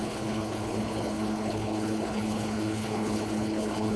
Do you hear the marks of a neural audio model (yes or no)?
yes